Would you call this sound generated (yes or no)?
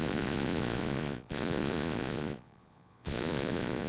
yes